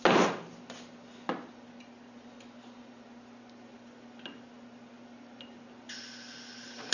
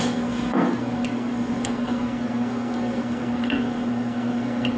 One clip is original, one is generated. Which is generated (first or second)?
second